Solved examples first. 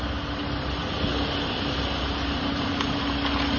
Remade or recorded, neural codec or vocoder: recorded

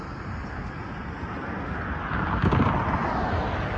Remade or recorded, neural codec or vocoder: recorded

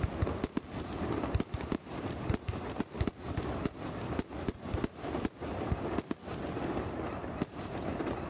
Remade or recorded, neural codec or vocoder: recorded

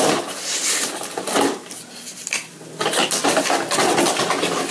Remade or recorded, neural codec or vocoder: recorded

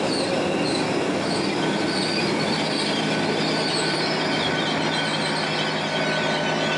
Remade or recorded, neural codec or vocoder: recorded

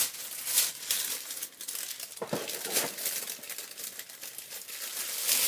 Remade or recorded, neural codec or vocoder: recorded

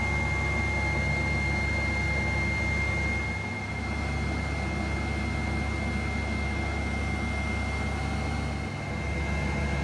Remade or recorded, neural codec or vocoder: recorded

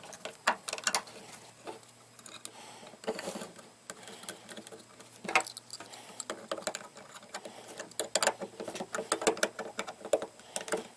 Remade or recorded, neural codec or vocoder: recorded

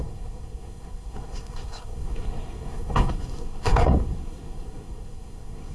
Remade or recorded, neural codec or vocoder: remade, codec, SNAC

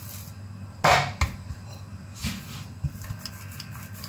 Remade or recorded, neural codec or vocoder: recorded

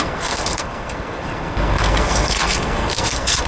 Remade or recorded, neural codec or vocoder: remade, codec, SNAC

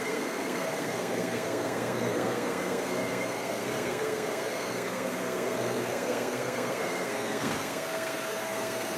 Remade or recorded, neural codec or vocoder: remade, codec, SNAC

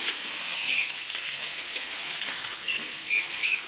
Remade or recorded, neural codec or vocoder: remade, codec, SNAC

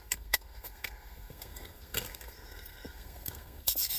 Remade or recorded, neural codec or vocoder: remade, codec, SNAC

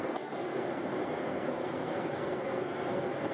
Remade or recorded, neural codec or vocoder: remade, codec, SNAC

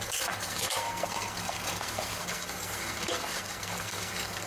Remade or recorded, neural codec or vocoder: remade, codec, SNAC